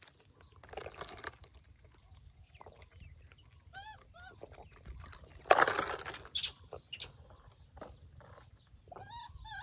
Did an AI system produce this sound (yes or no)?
no